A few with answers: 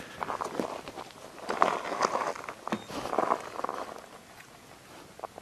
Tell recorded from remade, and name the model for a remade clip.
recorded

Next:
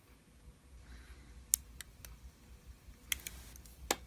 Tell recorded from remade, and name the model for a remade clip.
recorded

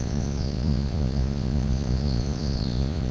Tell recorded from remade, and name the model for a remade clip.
remade, vocoder, Vocos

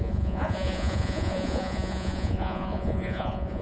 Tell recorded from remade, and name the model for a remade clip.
remade, vocoder, Vocos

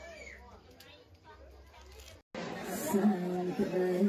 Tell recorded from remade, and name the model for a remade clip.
recorded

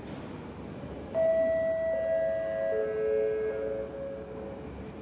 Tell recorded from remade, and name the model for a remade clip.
recorded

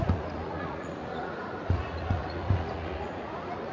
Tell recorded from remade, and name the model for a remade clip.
remade, vocoder, Vocos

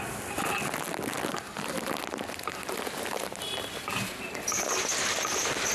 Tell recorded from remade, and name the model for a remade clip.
recorded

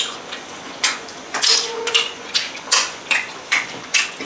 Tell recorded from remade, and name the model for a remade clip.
remade, vocoder, Vocos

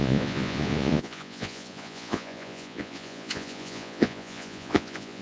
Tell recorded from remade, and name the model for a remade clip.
remade, vocoder, Vocos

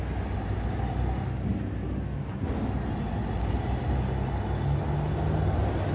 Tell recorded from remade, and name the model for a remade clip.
recorded